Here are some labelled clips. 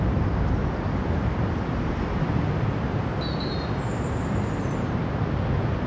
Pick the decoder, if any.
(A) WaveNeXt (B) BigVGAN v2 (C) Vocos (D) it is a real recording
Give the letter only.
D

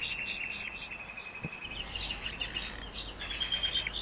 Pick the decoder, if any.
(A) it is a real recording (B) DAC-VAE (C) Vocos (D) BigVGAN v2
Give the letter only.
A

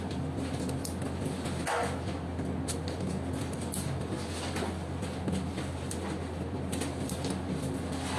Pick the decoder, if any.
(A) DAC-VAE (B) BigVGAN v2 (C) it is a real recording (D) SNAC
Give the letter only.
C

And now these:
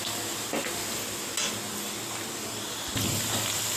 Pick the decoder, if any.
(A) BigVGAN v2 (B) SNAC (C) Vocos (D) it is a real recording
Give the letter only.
D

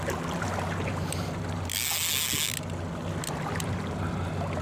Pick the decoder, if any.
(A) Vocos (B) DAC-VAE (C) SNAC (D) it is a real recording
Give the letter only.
D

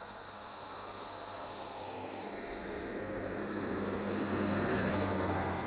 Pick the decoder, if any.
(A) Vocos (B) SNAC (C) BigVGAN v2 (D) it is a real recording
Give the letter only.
B